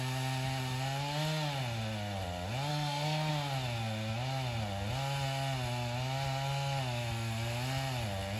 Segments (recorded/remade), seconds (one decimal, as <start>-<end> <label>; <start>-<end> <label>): 0.0-2.7 recorded; 2.7-3.3 remade; 3.3-8.4 recorded